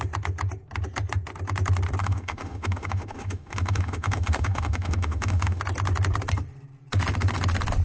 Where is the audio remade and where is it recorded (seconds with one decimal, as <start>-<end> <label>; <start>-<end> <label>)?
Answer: 0.0-2.0 recorded; 2.0-5.6 remade; 5.6-7.8 recorded